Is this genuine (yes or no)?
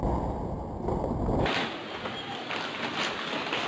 yes